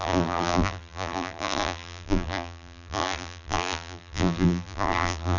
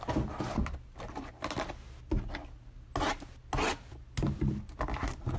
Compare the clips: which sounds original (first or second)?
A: second